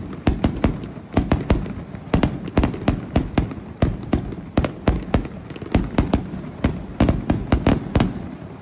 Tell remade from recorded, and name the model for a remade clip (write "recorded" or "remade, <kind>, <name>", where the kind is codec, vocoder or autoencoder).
recorded